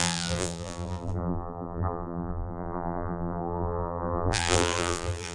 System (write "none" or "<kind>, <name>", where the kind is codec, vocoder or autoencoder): vocoder, BigVGAN v2